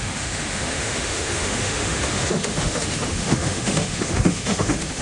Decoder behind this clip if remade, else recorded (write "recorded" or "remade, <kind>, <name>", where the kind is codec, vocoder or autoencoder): remade, autoencoder, DAC-VAE